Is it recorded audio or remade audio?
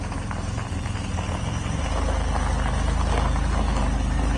recorded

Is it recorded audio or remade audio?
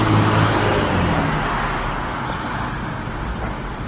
recorded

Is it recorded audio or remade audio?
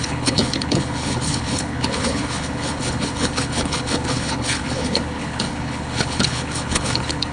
remade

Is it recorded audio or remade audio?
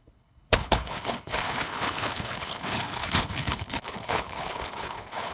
remade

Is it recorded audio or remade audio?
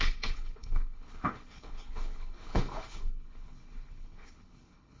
remade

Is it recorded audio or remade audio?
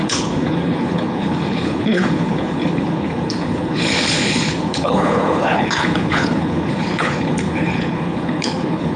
remade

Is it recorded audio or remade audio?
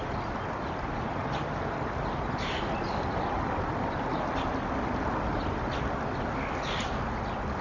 recorded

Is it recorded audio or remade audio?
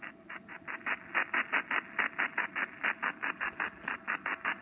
recorded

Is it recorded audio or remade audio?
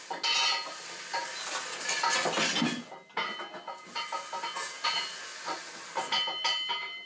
recorded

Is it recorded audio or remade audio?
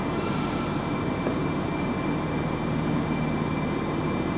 recorded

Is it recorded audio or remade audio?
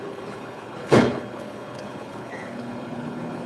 remade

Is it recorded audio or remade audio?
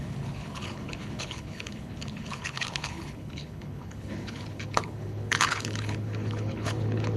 remade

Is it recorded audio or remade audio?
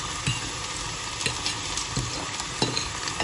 recorded